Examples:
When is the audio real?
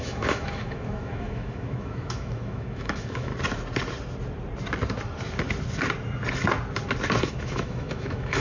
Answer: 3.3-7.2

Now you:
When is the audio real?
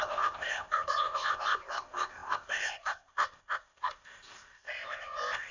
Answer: none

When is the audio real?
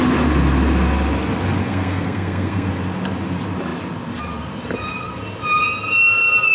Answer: 0.0-1.6; 2.7-6.5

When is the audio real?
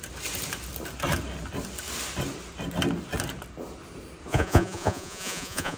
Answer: 0.0-4.3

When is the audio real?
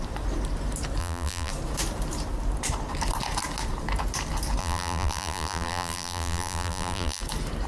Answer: 0.0-1.0; 1.5-4.6; 7.2-7.7